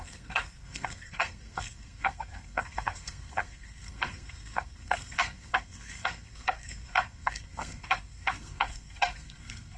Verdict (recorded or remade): remade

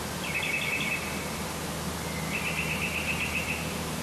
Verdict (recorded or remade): recorded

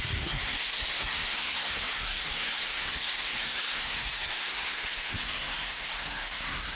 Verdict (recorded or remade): remade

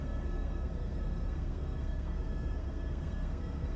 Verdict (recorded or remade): remade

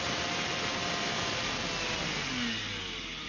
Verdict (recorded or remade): recorded